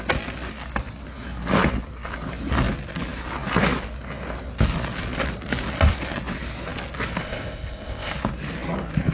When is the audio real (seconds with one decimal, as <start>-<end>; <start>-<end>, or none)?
0.0-7.2; 8.1-9.1